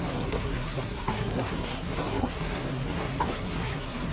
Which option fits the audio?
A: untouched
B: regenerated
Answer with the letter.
B